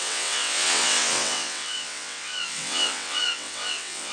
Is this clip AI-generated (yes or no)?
yes